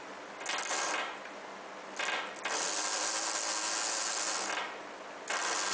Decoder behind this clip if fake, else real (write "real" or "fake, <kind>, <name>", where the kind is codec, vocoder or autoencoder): real